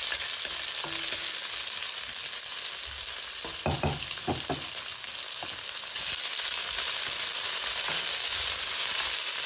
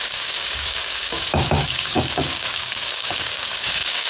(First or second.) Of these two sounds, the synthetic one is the second